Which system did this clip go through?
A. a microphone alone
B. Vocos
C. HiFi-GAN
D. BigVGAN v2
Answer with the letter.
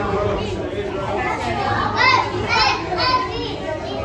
A